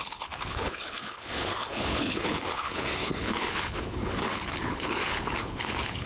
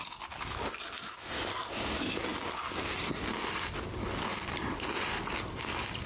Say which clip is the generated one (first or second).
first